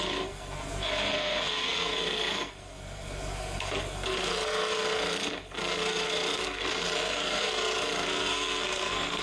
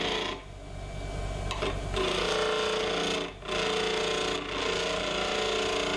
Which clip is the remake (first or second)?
first